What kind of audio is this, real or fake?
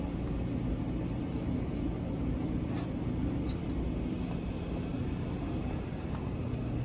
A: real